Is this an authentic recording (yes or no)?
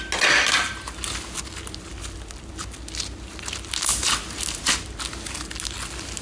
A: yes